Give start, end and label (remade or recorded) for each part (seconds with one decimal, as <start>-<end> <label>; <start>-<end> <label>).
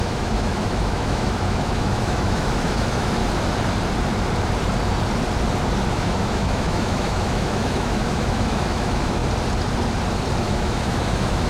0.0-3.2 remade; 3.2-5.9 recorded; 5.9-9.2 remade; 9.2-10.4 recorded; 10.4-11.5 remade